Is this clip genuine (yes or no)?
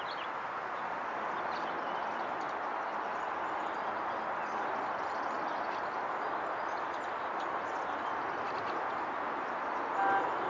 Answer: yes